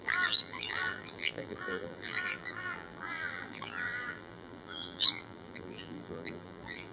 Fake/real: fake